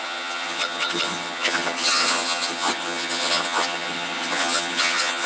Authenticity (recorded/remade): remade